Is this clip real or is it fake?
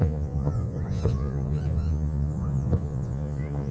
fake